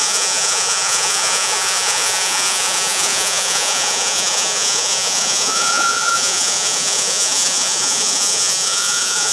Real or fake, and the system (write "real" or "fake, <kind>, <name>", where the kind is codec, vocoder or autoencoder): fake, vocoder, Vocos